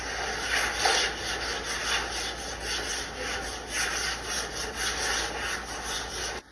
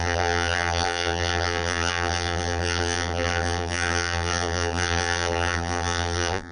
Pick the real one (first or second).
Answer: first